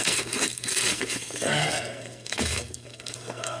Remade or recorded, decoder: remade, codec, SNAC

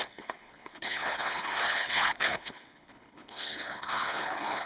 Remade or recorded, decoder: remade, codec, HILCodec